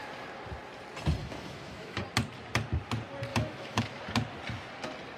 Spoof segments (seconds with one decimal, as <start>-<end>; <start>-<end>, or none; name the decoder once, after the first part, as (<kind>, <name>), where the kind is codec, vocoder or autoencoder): 1.2-2.0 (autoencoder, DAC-VAE); 3.3-3.8